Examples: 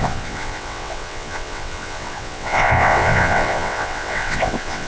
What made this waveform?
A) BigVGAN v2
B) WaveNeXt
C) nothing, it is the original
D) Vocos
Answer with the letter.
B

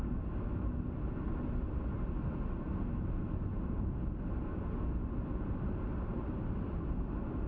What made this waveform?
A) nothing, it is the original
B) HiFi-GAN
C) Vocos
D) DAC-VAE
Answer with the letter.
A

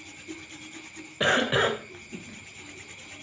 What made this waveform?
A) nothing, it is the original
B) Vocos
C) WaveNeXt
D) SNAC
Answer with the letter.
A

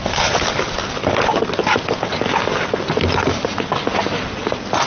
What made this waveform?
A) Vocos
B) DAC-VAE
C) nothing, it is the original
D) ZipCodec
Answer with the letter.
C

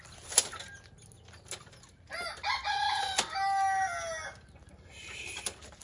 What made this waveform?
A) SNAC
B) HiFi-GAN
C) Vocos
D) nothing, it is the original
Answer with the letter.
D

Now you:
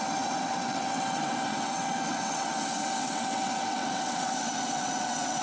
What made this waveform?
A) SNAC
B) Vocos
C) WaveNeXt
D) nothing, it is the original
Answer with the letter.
C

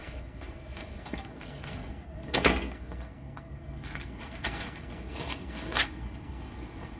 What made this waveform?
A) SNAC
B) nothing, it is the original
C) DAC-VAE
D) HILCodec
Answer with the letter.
A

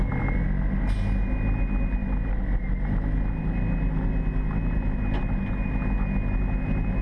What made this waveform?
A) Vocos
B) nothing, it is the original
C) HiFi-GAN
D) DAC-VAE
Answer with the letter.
B